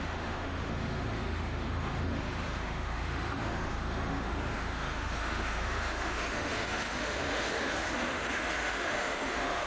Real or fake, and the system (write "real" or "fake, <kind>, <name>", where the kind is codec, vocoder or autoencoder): fake, autoencoder, DAC-VAE